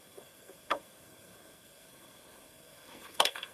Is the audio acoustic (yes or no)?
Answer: no